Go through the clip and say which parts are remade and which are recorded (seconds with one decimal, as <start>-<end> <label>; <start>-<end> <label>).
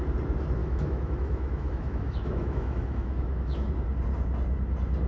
0.0-0.6 recorded; 0.6-3.7 remade; 3.7-5.1 recorded